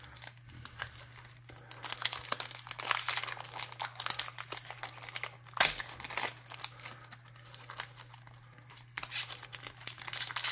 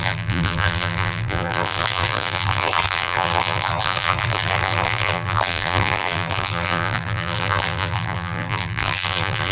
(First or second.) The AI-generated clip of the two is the second